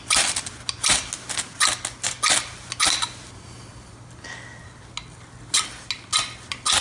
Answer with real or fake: real